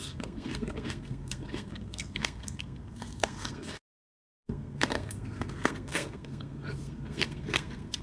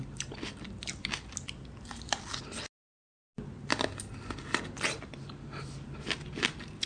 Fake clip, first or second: first